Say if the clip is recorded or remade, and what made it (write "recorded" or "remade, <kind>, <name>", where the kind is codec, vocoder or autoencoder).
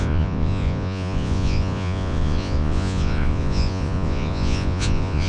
remade, vocoder, Vocos